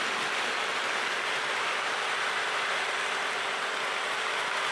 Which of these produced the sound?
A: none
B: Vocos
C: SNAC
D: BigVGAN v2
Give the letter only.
A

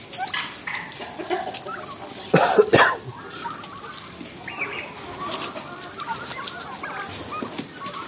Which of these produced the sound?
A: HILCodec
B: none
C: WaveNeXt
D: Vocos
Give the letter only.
B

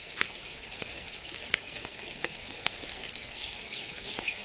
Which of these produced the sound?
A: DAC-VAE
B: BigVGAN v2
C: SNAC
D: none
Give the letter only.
C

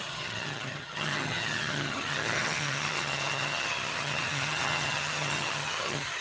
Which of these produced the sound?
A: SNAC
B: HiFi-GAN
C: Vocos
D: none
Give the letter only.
B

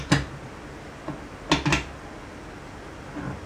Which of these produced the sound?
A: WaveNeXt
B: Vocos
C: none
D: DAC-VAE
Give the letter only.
C